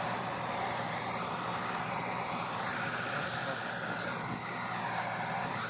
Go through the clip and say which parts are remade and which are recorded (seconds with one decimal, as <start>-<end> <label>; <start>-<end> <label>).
0.0-3.4 remade; 3.4-4.0 recorded; 4.0-5.7 remade

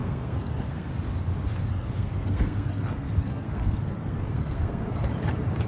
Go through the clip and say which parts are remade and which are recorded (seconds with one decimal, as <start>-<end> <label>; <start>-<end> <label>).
0.0-0.9 remade; 0.9-1.7 recorded; 1.7-5.1 remade; 5.1-5.7 recorded

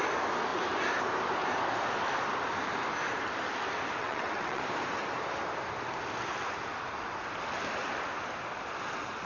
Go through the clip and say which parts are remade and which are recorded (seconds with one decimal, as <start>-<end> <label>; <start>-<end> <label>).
0.0-4.0 recorded; 4.0-4.6 remade; 4.6-9.3 recorded

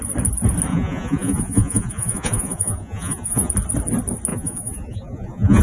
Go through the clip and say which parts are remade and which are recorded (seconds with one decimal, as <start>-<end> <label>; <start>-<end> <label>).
0.0-0.7 recorded; 0.7-3.5 remade; 3.5-4.3 recorded; 4.3-5.6 remade